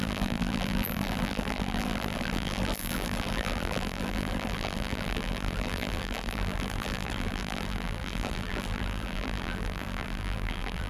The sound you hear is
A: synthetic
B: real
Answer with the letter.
A